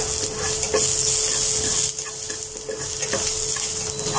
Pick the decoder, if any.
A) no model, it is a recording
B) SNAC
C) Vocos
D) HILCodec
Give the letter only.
A